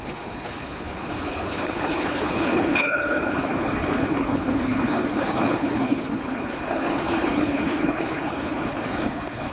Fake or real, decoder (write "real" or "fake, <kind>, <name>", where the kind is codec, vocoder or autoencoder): fake, codec, HILCodec